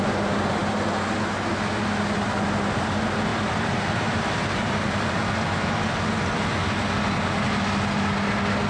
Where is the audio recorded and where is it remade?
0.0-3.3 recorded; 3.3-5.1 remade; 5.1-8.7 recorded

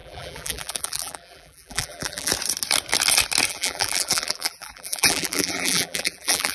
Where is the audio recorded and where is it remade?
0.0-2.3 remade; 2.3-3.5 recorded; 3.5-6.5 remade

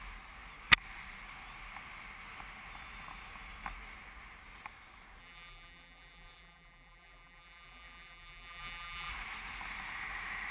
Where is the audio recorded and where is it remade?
0.0-5.2 recorded; 5.2-9.1 remade; 9.1-10.5 recorded